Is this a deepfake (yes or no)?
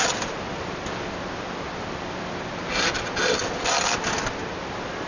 no